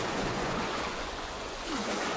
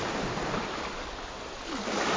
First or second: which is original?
second